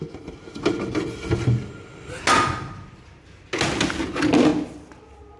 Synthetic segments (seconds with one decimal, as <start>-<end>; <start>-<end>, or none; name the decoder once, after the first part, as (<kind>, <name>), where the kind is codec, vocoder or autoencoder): none